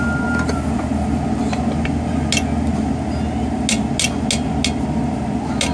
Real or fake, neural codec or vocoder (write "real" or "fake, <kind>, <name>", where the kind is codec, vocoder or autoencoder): real